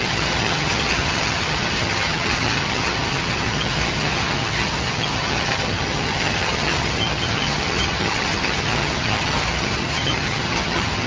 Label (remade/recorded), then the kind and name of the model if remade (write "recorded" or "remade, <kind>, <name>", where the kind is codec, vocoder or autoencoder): remade, vocoder, HiFi-GAN